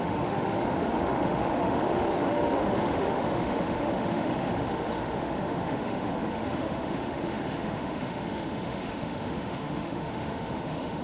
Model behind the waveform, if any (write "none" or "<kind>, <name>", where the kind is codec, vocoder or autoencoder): autoencoder, DAC-VAE